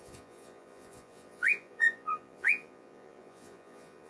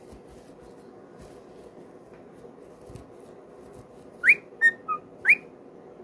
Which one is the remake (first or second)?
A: first